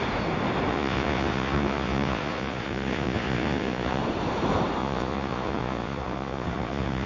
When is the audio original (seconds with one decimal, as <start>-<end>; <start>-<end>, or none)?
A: 0.0-0.7; 4.0-4.8